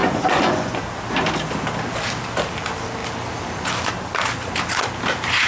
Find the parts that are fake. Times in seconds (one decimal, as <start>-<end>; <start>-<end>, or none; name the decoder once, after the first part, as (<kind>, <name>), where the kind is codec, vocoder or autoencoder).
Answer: 0.0-0.8 (vocoder, Vocos)